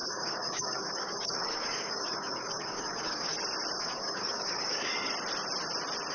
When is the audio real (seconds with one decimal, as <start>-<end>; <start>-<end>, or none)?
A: 3.3-3.8; 4.9-6.1